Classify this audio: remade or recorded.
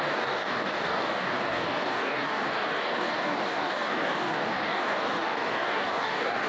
remade